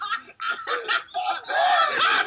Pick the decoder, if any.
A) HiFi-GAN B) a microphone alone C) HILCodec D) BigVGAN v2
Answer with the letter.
B